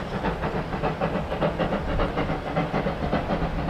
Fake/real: real